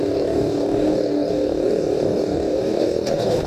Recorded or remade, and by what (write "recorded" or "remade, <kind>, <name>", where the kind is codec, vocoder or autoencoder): remade, codec, DAC